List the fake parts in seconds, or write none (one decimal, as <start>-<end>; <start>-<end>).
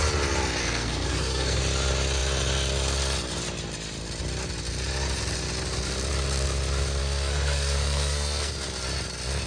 0.6-1.6; 7.0-8.5